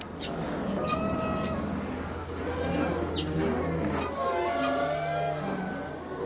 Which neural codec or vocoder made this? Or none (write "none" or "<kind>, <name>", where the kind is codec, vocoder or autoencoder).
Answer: none